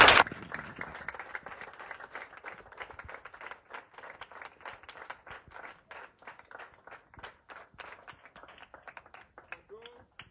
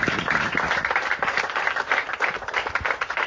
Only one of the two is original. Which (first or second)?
first